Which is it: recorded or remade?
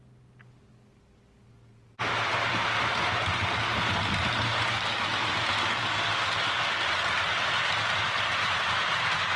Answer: recorded